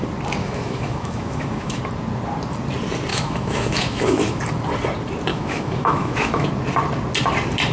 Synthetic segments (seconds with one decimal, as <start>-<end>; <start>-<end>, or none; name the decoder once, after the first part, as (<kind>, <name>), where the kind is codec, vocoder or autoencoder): 0.4-1.8 (autoencoder, DAC-VAE); 3.1-4.4; 5.3-6.5